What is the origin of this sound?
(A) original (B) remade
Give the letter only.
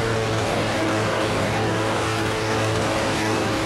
B